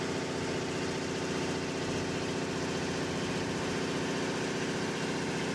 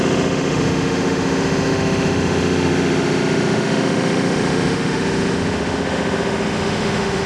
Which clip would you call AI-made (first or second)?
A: second